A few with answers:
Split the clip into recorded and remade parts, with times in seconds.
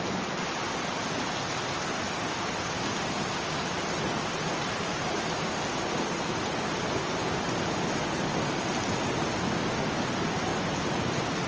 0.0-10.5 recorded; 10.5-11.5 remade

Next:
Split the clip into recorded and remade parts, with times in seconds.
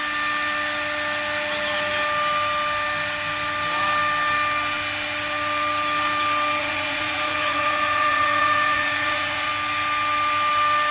0.0-6.6 recorded; 6.6-9.5 remade; 9.5-10.9 recorded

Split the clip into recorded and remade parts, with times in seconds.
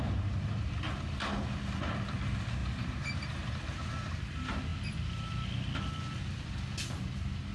0.0-2.6 recorded; 2.6-4.2 remade; 4.2-7.5 recorded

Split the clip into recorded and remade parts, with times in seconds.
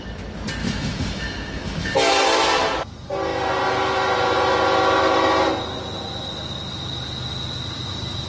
0.0-0.6 recorded; 0.6-2.1 remade; 2.1-8.3 recorded